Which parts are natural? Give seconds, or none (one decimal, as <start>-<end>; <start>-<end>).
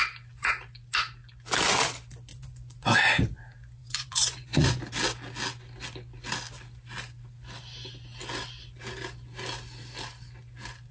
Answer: 0.0-2.3; 3.2-3.8; 4.8-10.9